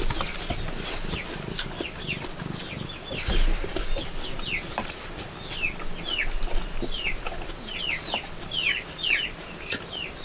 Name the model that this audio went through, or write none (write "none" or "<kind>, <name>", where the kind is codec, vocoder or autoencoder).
none